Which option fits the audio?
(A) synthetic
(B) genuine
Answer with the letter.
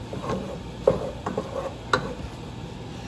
B